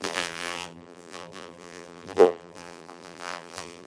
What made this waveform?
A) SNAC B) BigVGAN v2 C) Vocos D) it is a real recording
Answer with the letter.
B